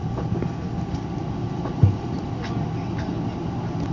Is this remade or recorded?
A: recorded